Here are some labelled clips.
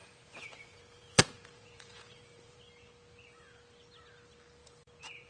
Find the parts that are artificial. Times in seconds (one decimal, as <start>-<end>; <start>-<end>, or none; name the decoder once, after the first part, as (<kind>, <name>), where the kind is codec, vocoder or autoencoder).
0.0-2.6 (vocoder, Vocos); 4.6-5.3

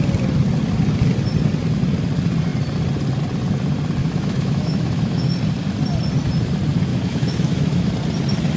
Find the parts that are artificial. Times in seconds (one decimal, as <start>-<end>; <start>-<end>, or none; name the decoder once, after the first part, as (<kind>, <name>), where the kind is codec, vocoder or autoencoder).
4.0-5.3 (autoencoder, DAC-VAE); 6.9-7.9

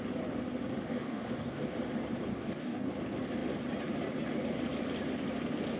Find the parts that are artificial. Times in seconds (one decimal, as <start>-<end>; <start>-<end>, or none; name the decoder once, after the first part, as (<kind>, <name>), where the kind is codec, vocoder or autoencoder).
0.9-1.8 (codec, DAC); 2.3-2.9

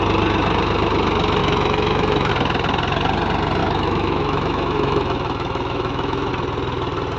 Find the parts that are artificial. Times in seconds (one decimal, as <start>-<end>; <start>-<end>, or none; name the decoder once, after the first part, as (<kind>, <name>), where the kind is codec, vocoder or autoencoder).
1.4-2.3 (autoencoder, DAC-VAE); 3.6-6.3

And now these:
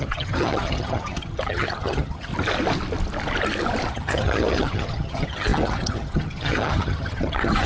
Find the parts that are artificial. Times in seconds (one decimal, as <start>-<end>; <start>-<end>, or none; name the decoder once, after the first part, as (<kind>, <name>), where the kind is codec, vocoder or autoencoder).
0.0-2.3 (vocoder, HiFi-GAN); 3.9-7.7